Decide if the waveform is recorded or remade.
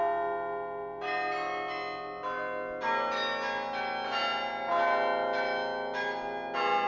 recorded